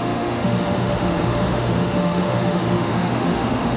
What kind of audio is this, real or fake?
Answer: fake